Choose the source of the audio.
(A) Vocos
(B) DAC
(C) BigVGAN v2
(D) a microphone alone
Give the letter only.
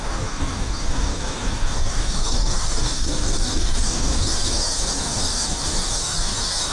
B